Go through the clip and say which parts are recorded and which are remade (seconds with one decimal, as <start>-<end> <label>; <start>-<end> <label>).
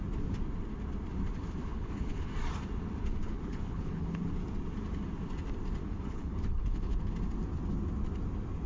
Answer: 0.0-1.6 recorded; 1.6-2.3 remade; 2.3-3.0 recorded; 3.0-4.3 remade; 4.3-5.8 recorded; 5.8-7.1 remade; 7.1-8.7 recorded